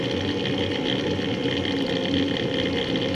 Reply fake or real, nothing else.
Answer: real